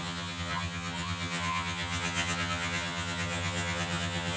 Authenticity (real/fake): fake